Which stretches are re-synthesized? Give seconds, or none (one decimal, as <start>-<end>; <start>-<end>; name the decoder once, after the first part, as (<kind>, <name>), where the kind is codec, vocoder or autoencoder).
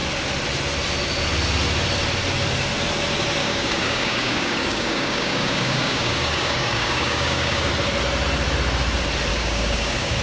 3.4-7.7 (codec, DAC); 9.3-10.2